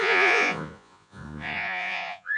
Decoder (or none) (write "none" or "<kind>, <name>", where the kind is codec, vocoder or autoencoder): vocoder, Vocos